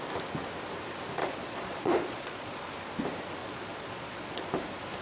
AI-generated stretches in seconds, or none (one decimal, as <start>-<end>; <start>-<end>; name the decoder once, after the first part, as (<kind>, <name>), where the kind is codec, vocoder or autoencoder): 1.2-2.6 (vocoder, Vocos); 3.4-4.4